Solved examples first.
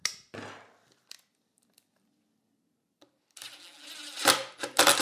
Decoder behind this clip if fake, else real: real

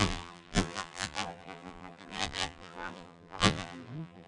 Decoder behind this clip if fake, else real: fake, vocoder, BigVGAN v2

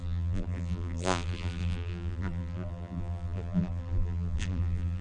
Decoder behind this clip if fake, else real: fake, vocoder, BigVGAN v2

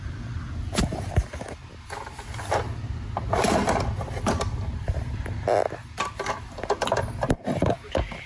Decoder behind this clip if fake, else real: fake, vocoder, BigVGAN v2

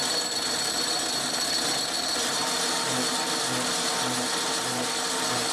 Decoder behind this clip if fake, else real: real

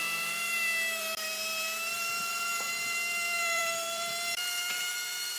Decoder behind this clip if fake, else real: fake, vocoder, BigVGAN v2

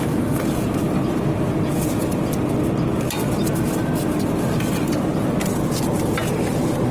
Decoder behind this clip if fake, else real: real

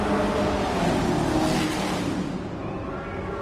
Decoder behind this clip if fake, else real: real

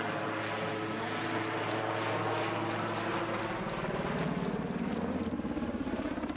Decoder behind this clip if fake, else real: real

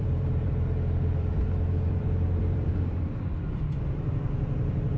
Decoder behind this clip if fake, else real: fake, vocoder, BigVGAN v2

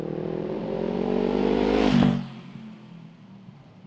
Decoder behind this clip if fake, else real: fake, vocoder, BigVGAN v2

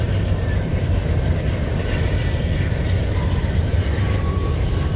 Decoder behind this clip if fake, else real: fake, vocoder, BigVGAN v2